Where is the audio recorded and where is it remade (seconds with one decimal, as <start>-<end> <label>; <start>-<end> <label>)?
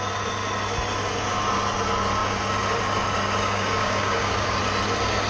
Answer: 0.0-3.4 recorded; 3.4-4.6 remade; 4.6-5.3 recorded